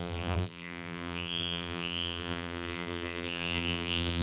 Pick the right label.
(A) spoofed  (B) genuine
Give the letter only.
A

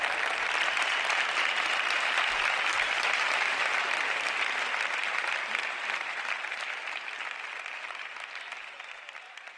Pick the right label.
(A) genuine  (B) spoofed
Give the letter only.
B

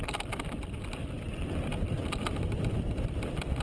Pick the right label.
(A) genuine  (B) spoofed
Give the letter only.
B